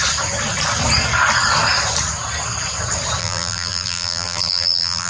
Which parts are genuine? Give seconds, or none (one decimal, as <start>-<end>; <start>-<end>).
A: 0.0-3.2